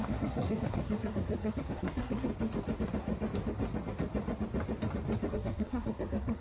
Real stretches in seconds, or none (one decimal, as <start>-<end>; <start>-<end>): 2.3-5.3